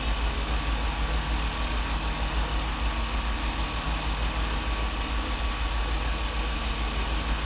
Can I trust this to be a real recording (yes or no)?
yes